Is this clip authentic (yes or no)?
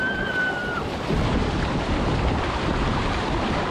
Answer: yes